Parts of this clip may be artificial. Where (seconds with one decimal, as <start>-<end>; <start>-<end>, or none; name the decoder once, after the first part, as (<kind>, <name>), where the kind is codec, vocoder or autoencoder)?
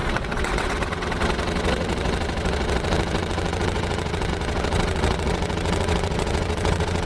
0.0-7.1 (vocoder, WaveNeXt)